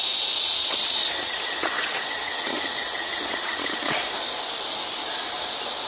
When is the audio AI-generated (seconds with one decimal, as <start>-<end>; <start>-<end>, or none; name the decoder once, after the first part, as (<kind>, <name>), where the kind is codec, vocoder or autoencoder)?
0.6-4.1 (vocoder, WaveNeXt)